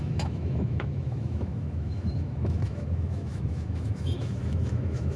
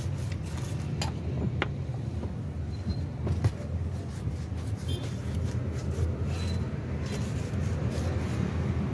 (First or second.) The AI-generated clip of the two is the first